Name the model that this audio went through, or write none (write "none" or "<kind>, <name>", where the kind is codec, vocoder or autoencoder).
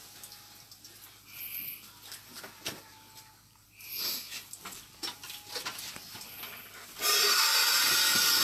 none